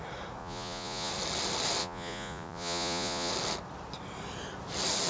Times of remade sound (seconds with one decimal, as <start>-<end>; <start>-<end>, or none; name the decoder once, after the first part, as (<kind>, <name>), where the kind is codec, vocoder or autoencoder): 0.4-1.1 (vocoder, Vocos); 1.8-3.3